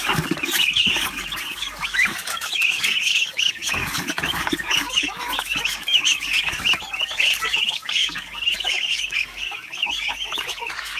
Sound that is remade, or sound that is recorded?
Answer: remade